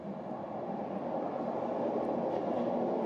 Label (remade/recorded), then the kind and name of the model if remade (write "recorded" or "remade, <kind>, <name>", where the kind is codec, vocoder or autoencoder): recorded